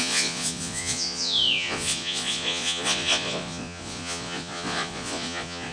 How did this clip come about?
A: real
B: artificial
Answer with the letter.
B